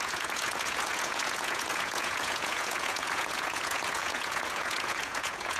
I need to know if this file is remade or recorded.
remade